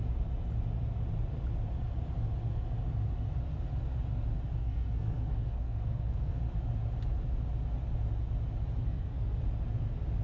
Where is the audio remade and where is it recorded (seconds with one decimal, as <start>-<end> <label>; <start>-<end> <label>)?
0.0-4.6 recorded; 4.6-6.4 remade; 6.4-8.8 recorded; 8.8-9.4 remade; 9.4-10.2 recorded